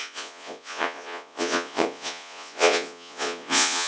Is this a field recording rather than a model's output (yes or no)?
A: no